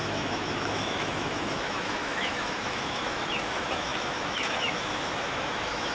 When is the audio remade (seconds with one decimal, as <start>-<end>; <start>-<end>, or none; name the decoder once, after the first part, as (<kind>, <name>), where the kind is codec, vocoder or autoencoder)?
0.0-5.9 (autoencoder, DAC-VAE)

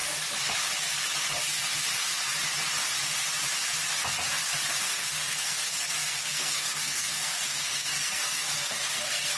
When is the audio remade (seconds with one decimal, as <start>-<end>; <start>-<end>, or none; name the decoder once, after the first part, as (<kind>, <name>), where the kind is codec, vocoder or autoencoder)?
4.8-9.4 (codec, SNAC)

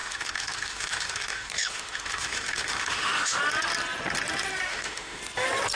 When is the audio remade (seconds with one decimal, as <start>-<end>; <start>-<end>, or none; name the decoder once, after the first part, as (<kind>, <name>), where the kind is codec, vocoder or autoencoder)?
0.0-3.4 (autoencoder, DAC-VAE); 4.7-5.2

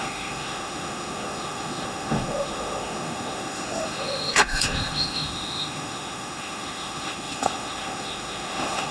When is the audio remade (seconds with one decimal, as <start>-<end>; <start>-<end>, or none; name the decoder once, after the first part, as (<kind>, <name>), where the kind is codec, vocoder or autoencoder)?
0.0-8.9 (autoencoder, DAC-VAE)

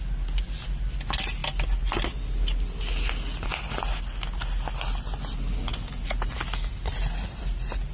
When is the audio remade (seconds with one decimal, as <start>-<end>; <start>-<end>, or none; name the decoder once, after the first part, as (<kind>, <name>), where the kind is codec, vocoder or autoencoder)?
none